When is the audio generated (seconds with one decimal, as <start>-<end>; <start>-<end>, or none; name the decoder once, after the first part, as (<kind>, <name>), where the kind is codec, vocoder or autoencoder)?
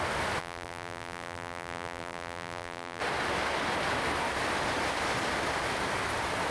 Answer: 0.4-3.0 (vocoder, BigVGAN v2)